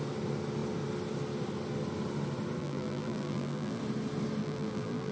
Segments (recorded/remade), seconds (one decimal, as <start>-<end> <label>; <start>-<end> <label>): 0.0-2.6 recorded; 2.6-3.8 remade; 3.8-4.4 recorded; 4.4-5.1 remade